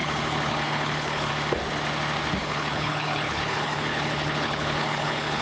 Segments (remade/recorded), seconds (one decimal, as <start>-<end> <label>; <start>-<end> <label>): 0.0-1.3 remade; 1.3-2.4 recorded; 2.4-5.4 remade